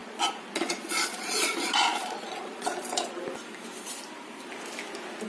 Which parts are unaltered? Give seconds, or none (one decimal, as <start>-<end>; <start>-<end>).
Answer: 3.2-5.3